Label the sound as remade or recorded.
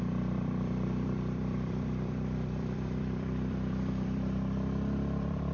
remade